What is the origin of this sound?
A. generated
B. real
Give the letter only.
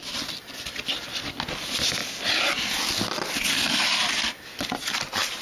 B